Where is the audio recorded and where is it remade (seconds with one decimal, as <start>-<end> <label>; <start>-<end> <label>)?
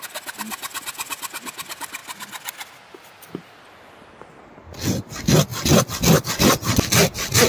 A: 0.0-7.5 recorded